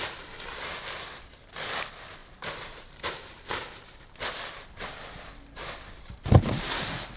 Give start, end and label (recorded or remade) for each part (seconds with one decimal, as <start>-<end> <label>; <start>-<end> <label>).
0.0-2.2 recorded; 2.2-6.5 remade; 6.5-7.2 recorded